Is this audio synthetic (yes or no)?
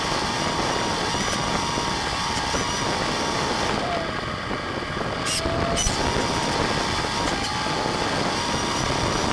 no